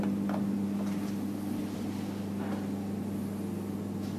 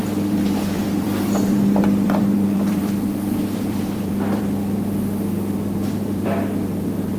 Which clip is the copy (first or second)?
second